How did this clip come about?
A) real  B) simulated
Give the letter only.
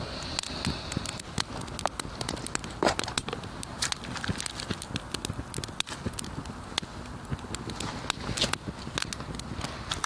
A